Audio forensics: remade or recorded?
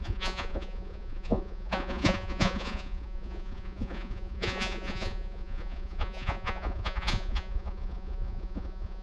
remade